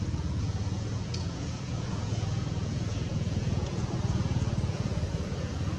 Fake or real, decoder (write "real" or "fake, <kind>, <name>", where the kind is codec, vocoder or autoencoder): fake, vocoder, Vocos